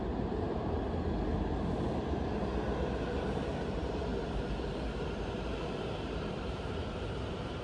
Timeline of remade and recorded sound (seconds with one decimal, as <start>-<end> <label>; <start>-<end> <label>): 0.0-0.8 remade; 0.8-2.8 recorded; 2.8-4.1 remade; 4.1-5.3 recorded; 5.3-7.6 remade

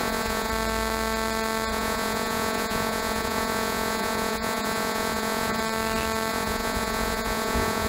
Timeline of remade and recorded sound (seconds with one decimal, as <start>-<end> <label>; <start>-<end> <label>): 0.0-0.5 remade; 0.5-1.7 recorded; 1.7-5.6 remade; 5.6-6.3 recorded; 6.3-7.9 remade

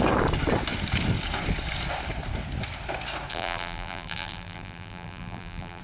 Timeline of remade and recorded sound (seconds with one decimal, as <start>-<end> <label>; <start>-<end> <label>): 0.0-3.3 recorded; 3.3-5.8 remade

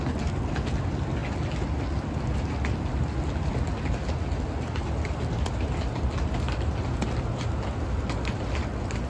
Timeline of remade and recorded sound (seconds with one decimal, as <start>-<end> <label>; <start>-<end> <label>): 0.0-9.1 recorded